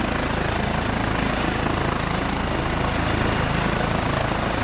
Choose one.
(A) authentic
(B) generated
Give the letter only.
A